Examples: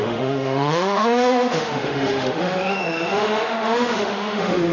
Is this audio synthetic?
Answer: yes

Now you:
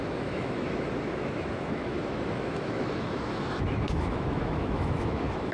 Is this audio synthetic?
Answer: yes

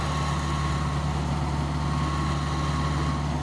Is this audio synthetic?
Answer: no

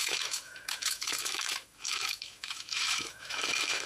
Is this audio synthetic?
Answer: yes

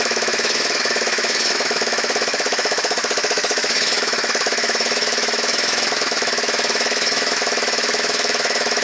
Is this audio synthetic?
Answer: yes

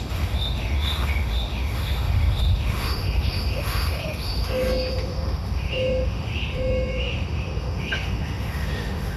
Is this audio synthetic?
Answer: yes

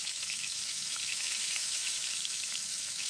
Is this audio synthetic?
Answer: yes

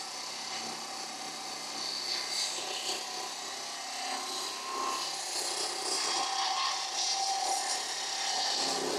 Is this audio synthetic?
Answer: no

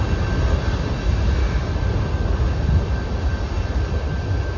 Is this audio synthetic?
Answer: no